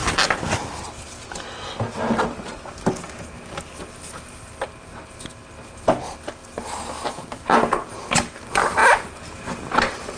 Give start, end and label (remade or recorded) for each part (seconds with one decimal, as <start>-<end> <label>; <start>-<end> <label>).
0.0-10.2 recorded